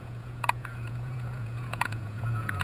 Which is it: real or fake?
fake